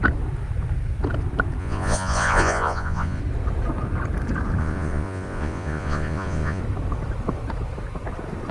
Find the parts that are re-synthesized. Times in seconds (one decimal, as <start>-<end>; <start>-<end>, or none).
1.6-3.2; 4.6-6.6